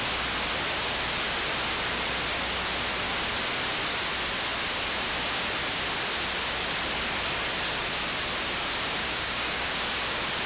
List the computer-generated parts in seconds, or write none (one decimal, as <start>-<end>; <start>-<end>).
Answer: 9.0-9.7